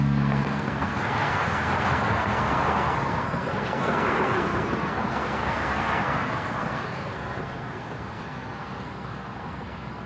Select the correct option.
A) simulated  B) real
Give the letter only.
A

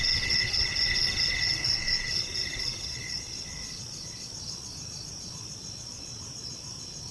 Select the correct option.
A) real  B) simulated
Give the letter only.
B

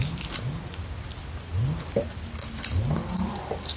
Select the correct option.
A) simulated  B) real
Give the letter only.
B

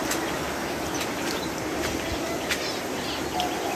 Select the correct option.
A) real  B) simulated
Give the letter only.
A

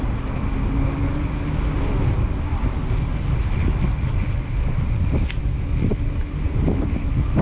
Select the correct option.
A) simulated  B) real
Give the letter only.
B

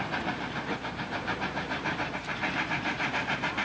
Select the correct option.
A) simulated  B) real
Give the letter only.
A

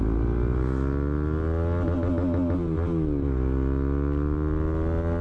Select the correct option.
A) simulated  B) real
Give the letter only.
B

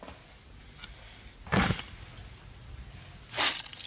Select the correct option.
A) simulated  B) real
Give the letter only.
B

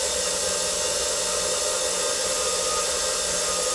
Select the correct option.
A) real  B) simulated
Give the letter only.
A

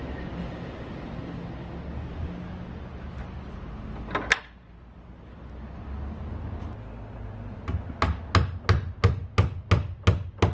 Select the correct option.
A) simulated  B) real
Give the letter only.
B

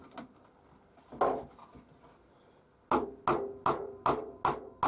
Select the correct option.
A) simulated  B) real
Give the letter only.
B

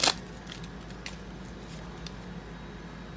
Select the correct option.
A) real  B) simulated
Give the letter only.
A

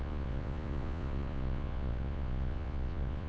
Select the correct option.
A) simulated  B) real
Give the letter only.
A